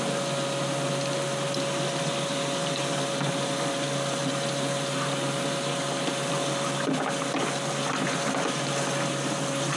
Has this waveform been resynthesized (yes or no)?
no